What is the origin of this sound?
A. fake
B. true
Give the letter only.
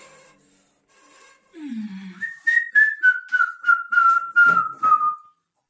B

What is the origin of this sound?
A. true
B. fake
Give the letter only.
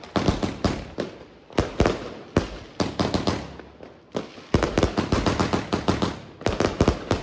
A